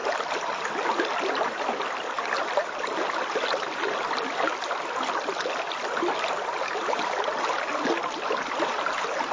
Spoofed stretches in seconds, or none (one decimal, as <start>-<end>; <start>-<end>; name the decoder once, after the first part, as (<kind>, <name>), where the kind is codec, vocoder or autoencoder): none